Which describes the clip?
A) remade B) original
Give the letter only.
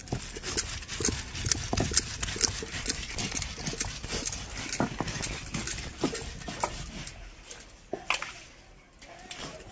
B